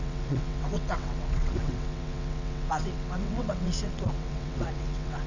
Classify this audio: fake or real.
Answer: fake